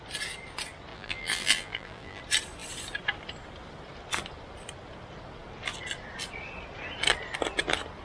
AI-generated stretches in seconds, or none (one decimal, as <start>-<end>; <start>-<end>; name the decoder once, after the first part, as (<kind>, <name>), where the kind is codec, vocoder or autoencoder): 0.9-2.2 (vocoder, BigVGAN v2)